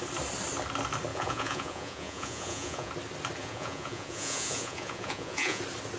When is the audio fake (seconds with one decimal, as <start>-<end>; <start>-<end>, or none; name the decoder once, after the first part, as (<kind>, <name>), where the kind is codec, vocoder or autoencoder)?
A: 1.1-2.9 (vocoder, Vocos); 3.4-5.6

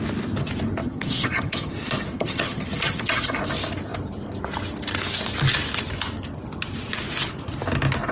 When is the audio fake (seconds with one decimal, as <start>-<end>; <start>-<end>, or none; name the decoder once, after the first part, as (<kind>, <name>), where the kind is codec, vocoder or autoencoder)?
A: 0.8-1.7 (vocoder, HiFi-GAN); 2.1-3.4

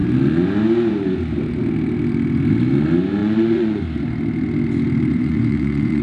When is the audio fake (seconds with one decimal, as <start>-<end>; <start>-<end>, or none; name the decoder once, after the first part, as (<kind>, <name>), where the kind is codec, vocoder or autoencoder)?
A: 3.2-3.8 (vocoder, Vocos); 5.1-6.0

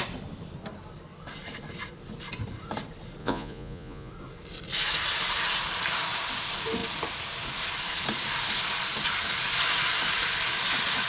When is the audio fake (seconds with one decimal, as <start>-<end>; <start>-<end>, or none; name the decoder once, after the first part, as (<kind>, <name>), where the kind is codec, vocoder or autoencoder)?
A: 3.2-4.1 (vocoder, Vocos)